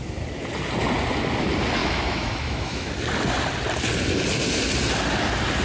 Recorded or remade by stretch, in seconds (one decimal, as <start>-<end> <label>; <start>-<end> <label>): 0.0-1.8 recorded; 1.8-2.9 remade; 2.9-5.6 recorded